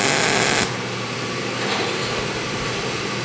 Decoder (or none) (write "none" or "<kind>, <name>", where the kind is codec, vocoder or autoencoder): none